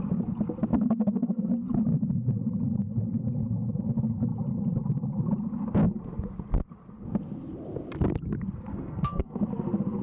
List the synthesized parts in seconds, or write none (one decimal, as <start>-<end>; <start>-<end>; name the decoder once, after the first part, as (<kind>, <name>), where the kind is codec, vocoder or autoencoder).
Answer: 0.7-1.5 (codec, SNAC); 8.7-9.4